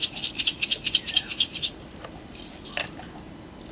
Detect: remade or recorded remade